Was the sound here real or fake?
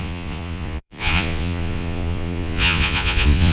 fake